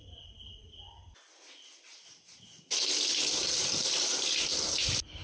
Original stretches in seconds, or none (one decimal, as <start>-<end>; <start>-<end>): 0.0-5.2

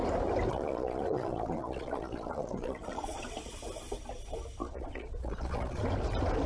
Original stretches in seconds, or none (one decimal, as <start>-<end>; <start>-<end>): 0.0-0.5; 3.5-4.6; 5.8-6.5

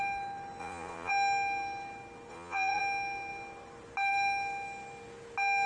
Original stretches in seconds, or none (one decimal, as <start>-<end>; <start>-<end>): 0.0-0.6; 1.1-2.3; 2.8-5.7

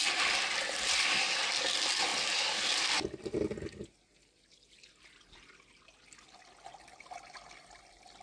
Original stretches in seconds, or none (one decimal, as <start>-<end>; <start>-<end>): 0.0-8.2

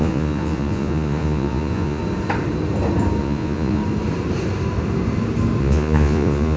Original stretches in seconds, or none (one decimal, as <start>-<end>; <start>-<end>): 2.0-3.2; 3.8-5.6

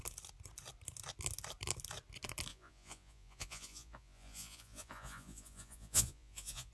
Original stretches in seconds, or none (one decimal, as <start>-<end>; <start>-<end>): 0.0-2.5